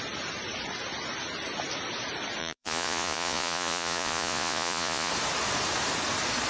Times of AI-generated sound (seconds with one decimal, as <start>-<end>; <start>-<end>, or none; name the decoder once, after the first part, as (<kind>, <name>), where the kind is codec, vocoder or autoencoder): 2.4-5.1 (vocoder, Vocos)